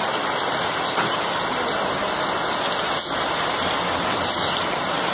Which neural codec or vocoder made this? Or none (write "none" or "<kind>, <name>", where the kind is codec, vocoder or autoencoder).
none